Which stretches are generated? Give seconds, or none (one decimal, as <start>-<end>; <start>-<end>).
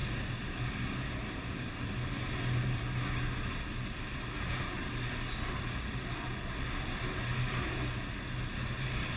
none